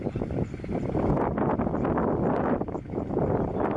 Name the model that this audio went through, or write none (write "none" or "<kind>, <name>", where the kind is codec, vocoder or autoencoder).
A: none